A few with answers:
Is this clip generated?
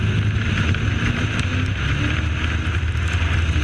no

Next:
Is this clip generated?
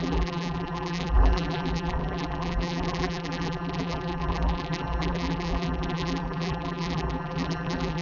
yes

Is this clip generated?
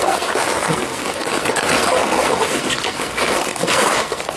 yes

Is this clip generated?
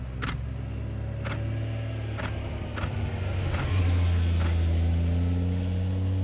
no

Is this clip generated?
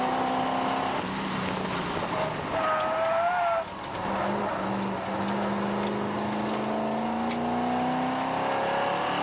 no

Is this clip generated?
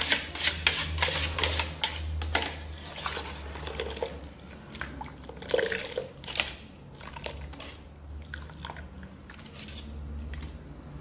no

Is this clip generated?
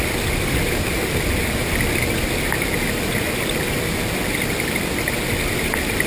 no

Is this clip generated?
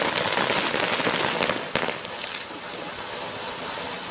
no